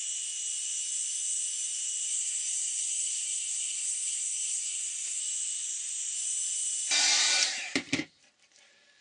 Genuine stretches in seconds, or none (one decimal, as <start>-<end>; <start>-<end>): 0.0-2.1; 5.2-9.0